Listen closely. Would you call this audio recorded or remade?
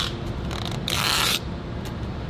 recorded